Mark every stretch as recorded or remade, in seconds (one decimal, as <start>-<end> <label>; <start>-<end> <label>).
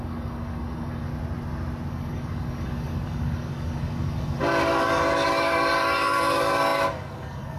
0.0-1.1 remade; 1.1-1.9 recorded; 1.9-7.6 remade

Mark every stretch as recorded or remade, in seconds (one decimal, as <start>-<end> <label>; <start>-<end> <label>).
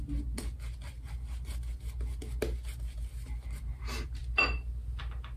0.0-5.4 recorded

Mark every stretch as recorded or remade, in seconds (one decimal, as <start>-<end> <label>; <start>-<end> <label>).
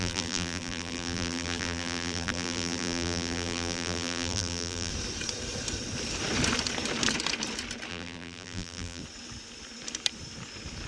0.0-4.9 remade; 4.9-7.9 recorded; 7.9-9.0 remade; 9.0-10.9 recorded